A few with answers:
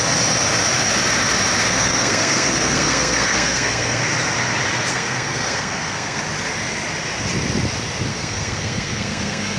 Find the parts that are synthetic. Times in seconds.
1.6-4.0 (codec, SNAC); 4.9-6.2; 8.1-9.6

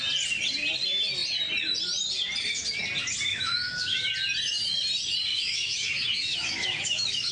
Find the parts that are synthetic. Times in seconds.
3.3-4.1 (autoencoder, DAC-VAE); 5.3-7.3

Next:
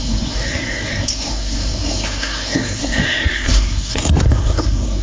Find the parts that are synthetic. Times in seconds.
0.0-5.0 (codec, SNAC)

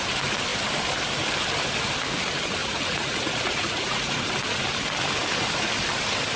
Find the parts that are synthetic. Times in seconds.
2.6-4.2 (vocoder, Vocos)

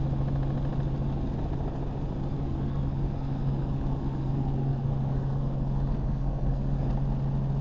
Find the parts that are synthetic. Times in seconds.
2.3-6.9 (codec, SNAC)

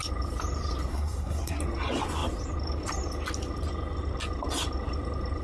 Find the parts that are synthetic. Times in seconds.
0.9-1.6 (codec, SNAC)